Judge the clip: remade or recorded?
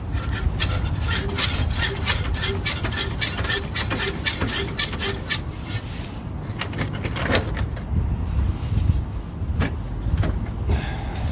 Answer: recorded